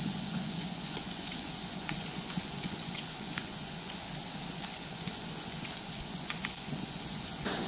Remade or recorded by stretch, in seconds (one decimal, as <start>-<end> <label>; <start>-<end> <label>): 0.0-4.0 remade; 4.0-4.5 recorded; 4.5-7.7 remade